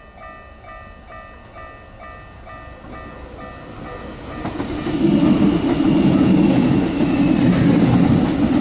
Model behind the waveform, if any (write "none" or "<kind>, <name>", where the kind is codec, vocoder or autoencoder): none